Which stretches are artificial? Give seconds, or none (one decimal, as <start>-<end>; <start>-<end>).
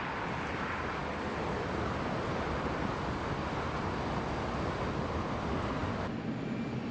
none